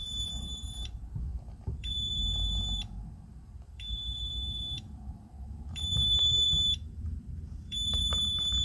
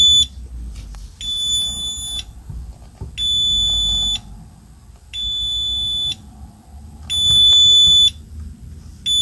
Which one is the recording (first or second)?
second